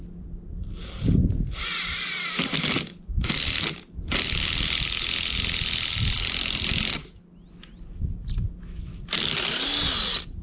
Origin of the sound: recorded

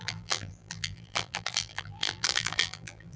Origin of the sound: remade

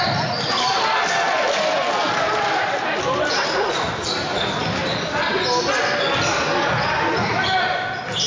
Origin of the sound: recorded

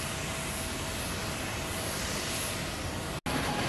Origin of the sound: recorded